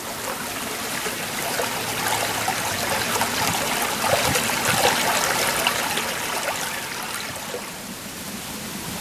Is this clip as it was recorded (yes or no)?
yes